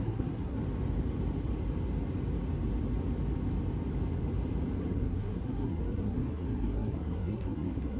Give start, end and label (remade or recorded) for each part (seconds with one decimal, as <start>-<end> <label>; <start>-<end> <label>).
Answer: 0.0-0.6 remade; 0.6-4.8 recorded; 4.8-8.0 remade